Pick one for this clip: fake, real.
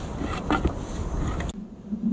real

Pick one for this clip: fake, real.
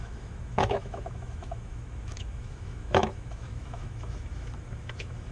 fake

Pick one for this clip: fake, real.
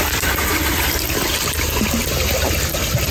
real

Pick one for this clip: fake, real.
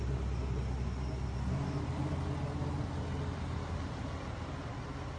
real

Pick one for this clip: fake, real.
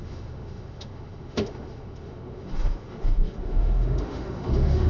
fake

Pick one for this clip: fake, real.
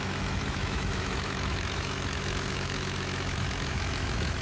fake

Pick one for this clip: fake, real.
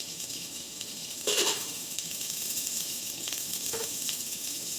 fake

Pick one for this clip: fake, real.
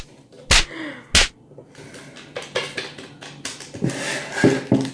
real